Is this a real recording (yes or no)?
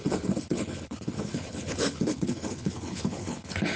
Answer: no